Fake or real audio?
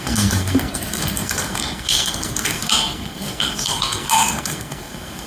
fake